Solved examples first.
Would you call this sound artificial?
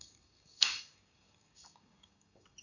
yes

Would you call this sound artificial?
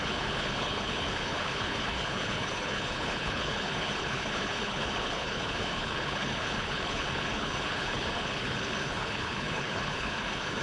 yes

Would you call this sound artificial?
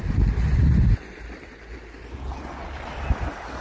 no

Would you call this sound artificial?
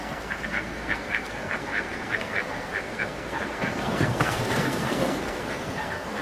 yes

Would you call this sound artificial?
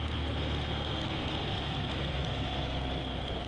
yes